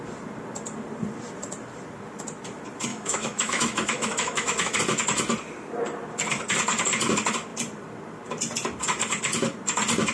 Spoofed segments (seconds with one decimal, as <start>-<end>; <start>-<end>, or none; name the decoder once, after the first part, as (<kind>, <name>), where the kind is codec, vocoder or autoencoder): 2.9-4.8 (autoencoder, DAC-VAE)